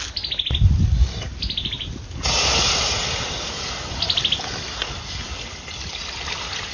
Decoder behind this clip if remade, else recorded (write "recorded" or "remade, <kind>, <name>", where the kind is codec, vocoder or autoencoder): remade, vocoder, BigVGAN v2